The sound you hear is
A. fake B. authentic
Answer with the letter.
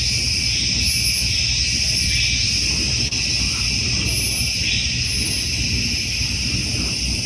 B